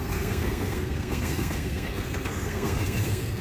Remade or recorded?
remade